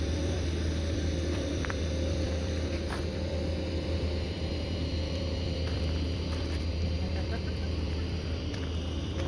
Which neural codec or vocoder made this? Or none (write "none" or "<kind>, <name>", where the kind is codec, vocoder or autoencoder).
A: vocoder, BigVGAN v2